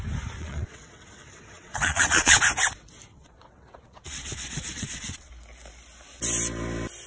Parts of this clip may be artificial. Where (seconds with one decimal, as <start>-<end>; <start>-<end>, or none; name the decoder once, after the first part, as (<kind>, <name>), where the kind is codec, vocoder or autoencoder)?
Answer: 0.4-2.4 (vocoder, WaveNeXt); 3.1-5.3